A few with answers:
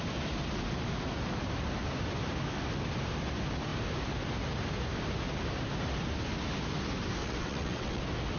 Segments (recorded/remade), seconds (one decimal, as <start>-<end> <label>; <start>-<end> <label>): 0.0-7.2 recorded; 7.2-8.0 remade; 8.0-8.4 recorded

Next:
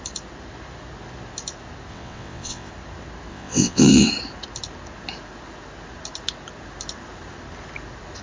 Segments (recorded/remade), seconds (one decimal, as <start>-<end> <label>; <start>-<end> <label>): 0.0-1.9 recorded; 1.9-2.7 remade; 2.7-3.3 recorded; 3.3-4.1 remade; 4.1-8.2 recorded

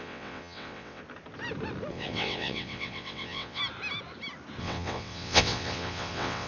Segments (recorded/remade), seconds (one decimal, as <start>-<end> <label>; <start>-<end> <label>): 0.0-1.0 remade; 1.0-1.9 recorded; 1.9-3.6 remade; 3.6-4.6 recorded; 4.6-6.5 remade

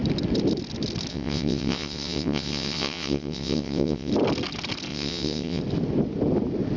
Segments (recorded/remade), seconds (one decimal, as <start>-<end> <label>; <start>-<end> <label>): 0.0-1.1 recorded; 1.1-4.1 remade; 4.1-4.9 recorded; 4.9-5.6 remade; 5.6-6.8 recorded

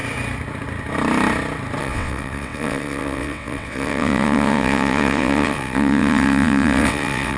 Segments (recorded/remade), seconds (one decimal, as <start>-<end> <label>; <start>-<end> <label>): 0.0-1.8 recorded; 1.8-7.4 remade

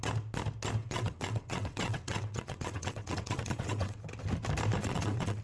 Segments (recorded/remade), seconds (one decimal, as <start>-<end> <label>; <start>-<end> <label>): 0.0-0.8 recorded; 0.8-4.0 remade; 4.0-4.8 recorded; 4.8-5.4 remade